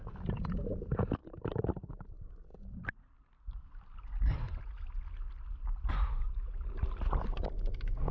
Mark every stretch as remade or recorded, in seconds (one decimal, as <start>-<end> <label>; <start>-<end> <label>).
0.0-2.5 recorded; 2.5-3.6 remade; 3.6-8.1 recorded